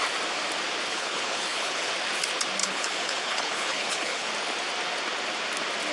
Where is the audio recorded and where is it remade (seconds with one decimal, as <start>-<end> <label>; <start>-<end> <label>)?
0.0-0.9 recorded; 0.9-1.9 remade; 1.9-2.6 recorded; 2.6-4.3 remade; 4.3-5.9 recorded